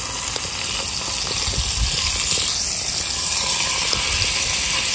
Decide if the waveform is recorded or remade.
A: recorded